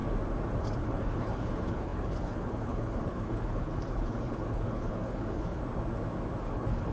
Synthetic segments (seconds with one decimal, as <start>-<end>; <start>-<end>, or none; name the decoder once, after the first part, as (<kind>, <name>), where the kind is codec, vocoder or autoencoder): 0.6-5.6 (codec, HILCodec); 6.4-6.9